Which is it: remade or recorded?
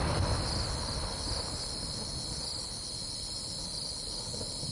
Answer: recorded